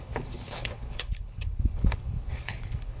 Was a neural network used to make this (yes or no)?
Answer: yes